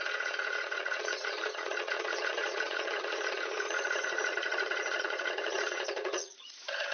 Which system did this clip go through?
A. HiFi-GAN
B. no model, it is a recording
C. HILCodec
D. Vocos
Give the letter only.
D